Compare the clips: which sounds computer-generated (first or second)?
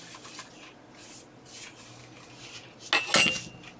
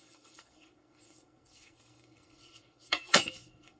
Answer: second